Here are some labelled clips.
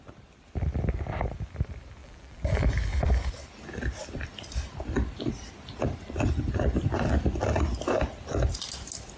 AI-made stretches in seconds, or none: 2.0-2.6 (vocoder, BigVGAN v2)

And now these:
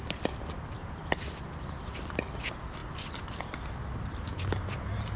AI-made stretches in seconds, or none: none